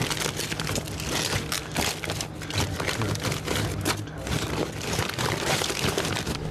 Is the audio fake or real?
real